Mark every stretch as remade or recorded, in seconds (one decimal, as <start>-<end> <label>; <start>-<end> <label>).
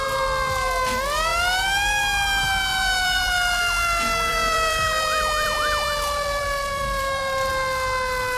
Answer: 0.0-2.7 recorded; 2.7-3.6 remade; 3.6-4.3 recorded; 4.3-7.5 remade; 7.5-8.4 recorded